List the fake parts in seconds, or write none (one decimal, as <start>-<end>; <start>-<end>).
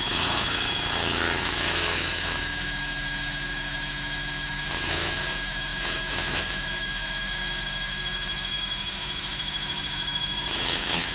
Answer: 0.0-11.1